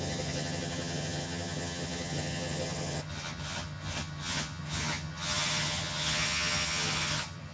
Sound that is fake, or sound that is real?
fake